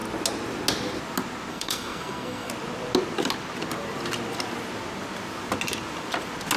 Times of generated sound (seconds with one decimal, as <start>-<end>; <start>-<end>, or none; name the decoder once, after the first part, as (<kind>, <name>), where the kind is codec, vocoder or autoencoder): 1.5-2.5 (codec, SNAC)